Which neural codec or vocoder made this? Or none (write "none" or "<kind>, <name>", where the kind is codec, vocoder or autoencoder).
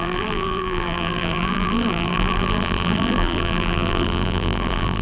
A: vocoder, BigVGAN v2